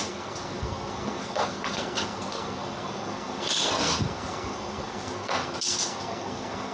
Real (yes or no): no